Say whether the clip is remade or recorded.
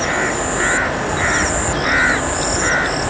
recorded